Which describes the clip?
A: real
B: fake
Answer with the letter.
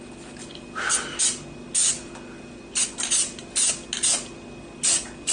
A